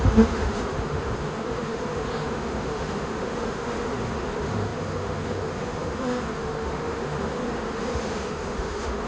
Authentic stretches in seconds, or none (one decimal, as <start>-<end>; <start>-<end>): none